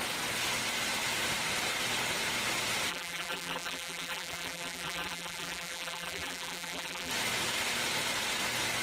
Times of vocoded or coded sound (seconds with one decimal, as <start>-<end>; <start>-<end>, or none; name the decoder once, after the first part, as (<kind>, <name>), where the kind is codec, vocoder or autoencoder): 2.9-7.1 (vocoder, BigVGAN v2)